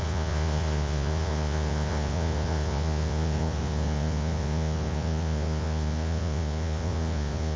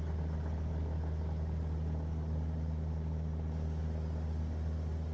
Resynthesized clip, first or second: first